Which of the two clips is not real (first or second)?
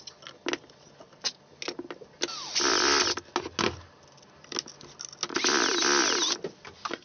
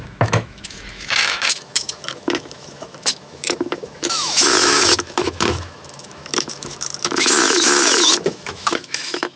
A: second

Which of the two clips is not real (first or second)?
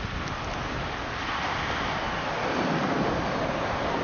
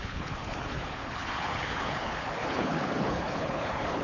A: second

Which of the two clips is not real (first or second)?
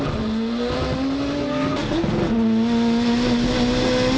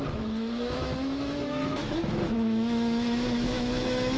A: second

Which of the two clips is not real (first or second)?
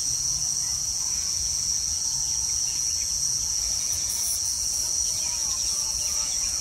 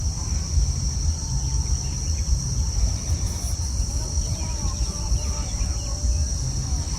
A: first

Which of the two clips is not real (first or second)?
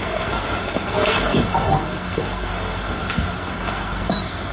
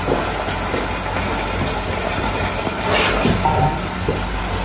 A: first